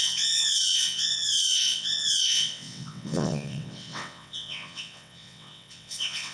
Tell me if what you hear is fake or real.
fake